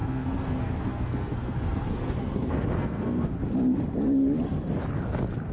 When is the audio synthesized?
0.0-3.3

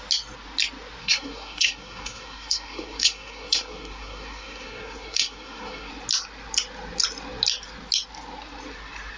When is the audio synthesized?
1.0-5.9

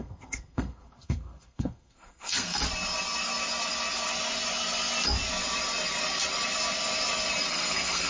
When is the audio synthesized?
0.0-2.6; 7.5-8.1

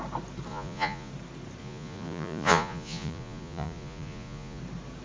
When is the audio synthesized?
0.5-1.1; 1.6-4.6

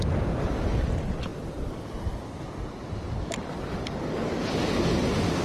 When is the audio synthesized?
none

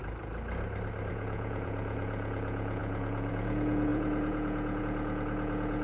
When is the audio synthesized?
1.1-5.8

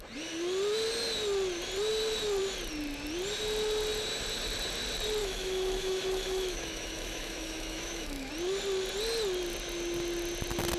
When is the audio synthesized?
5.2-8.3